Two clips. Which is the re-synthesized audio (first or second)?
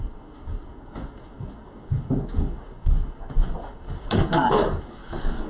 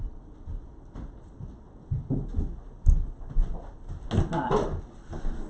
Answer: first